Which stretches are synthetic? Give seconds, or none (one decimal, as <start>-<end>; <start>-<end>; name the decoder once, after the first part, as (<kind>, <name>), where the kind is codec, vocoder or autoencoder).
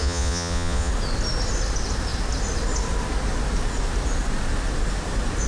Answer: 0.0-0.9 (vocoder, Vocos)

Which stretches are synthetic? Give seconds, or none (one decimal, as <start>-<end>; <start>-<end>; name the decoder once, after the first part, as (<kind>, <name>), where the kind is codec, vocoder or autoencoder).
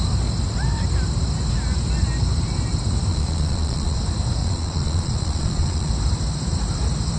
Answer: 3.1-4.0 (vocoder, Vocos); 4.4-5.9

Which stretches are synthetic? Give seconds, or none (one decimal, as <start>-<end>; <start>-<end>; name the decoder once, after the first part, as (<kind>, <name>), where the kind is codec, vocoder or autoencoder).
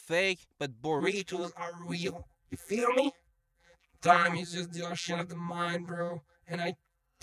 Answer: 1.0-7.2 (vocoder, BigVGAN v2)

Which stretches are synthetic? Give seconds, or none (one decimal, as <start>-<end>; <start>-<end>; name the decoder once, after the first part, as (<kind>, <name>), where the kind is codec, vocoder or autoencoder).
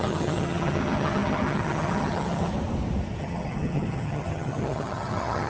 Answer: 0.0-2.5 (vocoder, HiFi-GAN); 3.2-5.5